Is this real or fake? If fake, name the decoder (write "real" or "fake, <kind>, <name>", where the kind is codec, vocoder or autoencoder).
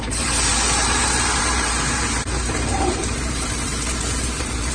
fake, vocoder, BigVGAN v2